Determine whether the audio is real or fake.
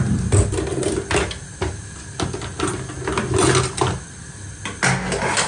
real